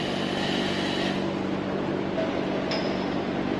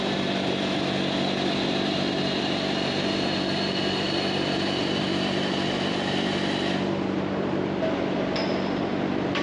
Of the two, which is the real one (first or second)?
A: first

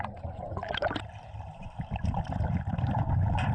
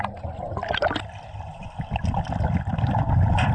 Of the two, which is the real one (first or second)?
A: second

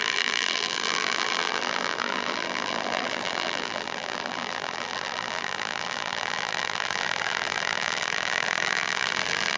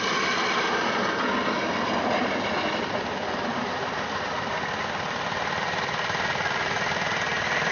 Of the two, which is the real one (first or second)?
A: second